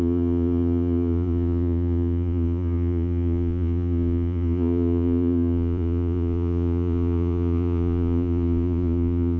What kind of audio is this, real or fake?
fake